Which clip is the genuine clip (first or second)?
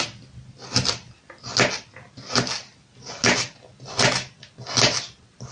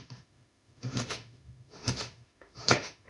first